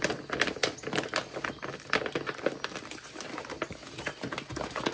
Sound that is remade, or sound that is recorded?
recorded